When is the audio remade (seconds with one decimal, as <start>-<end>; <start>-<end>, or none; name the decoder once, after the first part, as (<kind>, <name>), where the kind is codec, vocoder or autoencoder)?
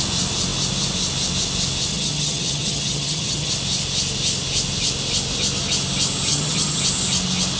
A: 1.9-3.5 (vocoder, HiFi-GAN); 6.3-6.8